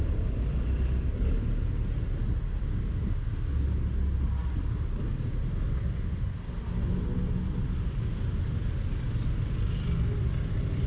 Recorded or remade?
recorded